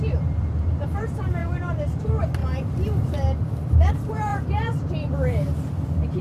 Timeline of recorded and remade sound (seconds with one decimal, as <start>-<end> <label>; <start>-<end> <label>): 0.0-2.4 remade; 2.4-3.9 recorded; 3.9-6.2 remade